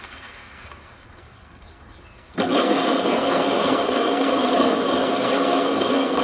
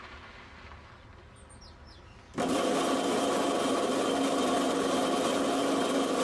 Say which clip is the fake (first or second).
first